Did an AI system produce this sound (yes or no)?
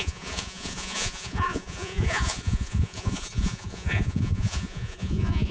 yes